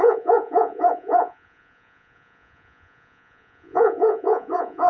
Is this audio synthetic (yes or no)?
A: yes